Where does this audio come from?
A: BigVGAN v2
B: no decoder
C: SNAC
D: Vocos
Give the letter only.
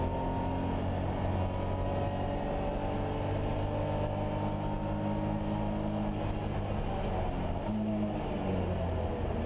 B